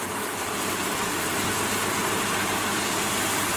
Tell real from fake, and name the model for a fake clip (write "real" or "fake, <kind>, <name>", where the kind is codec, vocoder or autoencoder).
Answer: fake, vocoder, BigVGAN v2